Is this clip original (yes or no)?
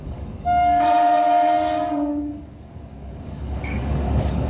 no